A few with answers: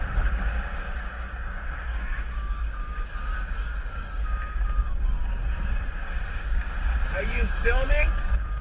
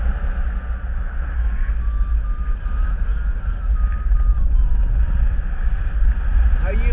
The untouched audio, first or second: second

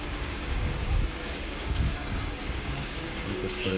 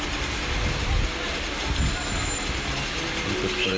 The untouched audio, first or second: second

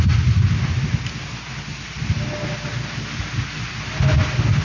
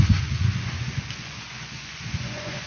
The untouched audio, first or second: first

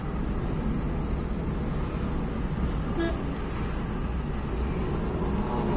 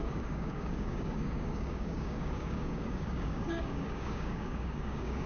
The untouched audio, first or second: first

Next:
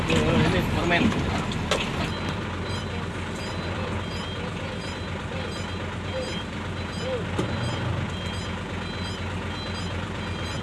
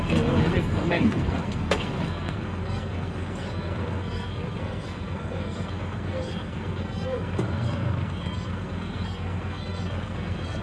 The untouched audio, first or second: first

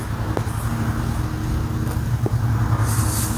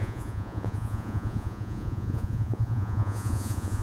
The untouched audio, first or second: first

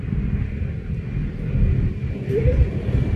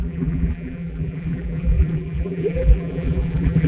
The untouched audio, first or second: first